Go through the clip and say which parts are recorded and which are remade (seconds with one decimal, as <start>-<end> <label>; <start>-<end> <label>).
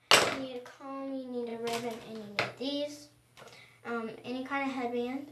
0.0-5.3 recorded